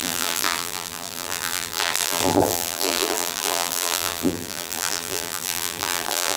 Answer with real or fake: fake